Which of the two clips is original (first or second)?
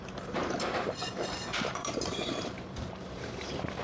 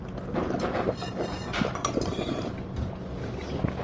second